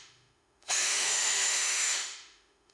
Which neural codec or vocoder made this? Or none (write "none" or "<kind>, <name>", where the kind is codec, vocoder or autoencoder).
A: autoencoder, DAC-VAE